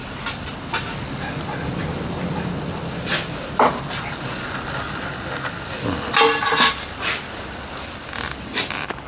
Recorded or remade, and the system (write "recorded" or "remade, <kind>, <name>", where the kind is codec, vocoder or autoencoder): recorded